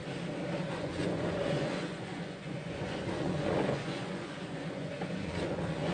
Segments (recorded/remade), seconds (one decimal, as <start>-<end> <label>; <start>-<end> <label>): 0.0-0.7 recorded; 0.7-5.9 remade